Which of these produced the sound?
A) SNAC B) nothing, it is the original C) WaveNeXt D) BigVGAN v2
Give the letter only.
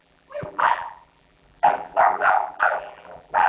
D